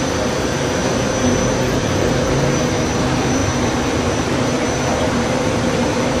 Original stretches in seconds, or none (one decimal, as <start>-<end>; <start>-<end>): none